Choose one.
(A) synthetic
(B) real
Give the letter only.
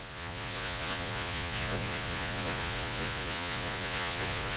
A